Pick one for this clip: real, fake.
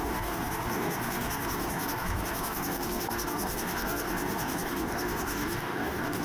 fake